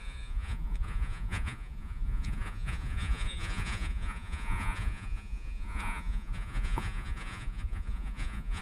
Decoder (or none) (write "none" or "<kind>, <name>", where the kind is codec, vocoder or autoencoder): vocoder, Vocos